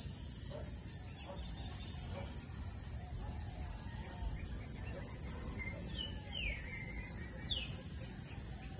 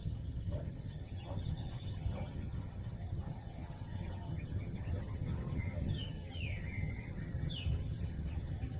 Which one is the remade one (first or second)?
second